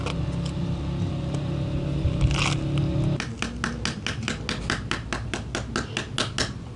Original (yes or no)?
yes